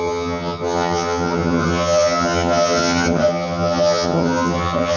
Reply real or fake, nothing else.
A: fake